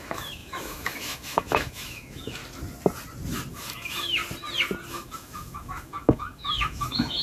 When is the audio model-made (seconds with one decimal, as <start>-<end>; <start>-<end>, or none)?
0.0-2.4; 3.5-4.2; 4.9-7.2